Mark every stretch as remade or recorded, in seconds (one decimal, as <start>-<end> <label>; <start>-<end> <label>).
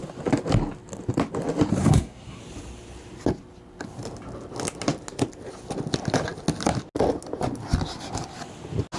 0.0-1.8 recorded; 1.8-2.4 remade; 2.4-9.0 recorded